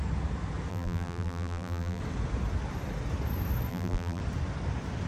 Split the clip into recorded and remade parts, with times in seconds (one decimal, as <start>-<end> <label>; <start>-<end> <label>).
0.0-0.7 recorded; 0.7-2.0 remade; 2.0-3.7 recorded; 3.7-4.2 remade; 4.2-5.1 recorded